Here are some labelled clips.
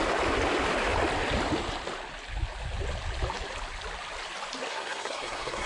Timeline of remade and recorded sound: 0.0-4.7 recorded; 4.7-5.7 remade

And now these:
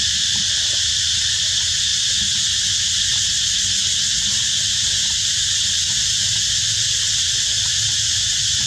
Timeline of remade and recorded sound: 0.0-8.7 recorded

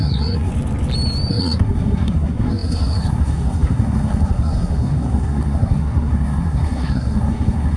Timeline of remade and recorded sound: 0.0-0.5 remade; 0.5-1.3 recorded; 1.3-7.8 remade

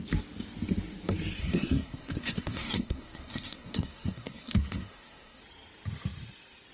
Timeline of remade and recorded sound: 0.0-1.4 recorded; 1.4-5.4 remade; 5.4-6.7 recorded

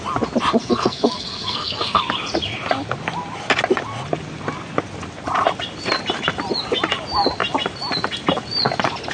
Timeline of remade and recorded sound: 0.0-0.6 recorded; 0.6-2.0 remade; 2.0-9.1 recorded